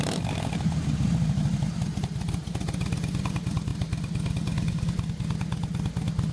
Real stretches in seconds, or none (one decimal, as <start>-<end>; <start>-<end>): 3.7-6.3